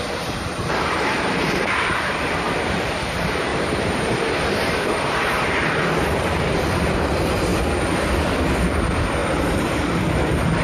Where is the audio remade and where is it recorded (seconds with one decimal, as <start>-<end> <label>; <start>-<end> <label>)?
0.0-7.5 remade; 7.5-8.7 recorded; 8.7-10.6 remade